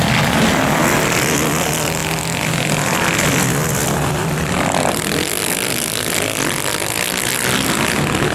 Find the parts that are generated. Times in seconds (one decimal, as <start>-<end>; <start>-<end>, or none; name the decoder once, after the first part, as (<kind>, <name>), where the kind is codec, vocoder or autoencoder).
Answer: none